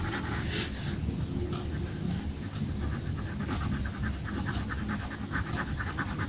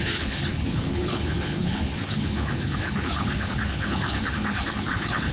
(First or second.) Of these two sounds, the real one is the first